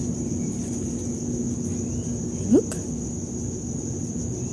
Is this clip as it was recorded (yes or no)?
yes